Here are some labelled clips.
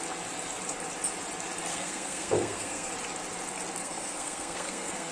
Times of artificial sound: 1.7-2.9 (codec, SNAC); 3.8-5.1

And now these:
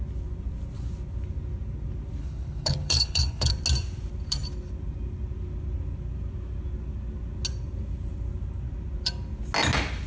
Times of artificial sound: 2.2-3.5 (codec, HILCodec)

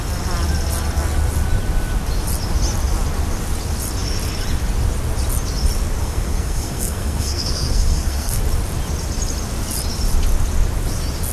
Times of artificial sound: 6.0-8.4 (codec, SNAC)

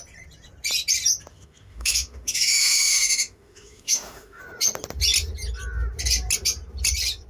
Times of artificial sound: 1.3-4.4 (autoencoder, DAC-VAE)

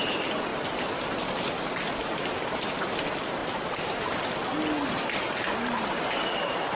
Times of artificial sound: none

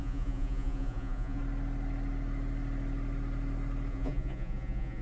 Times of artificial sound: 0.0-1.4 (vocoder, Vocos); 3.9-5.0

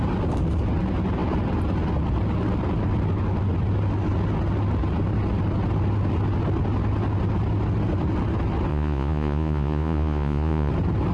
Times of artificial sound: 8.7-10.7 (vocoder, Vocos)